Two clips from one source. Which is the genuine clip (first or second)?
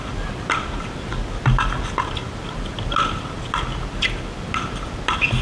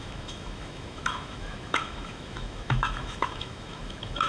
first